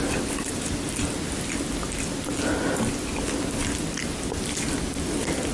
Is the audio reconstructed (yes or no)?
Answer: no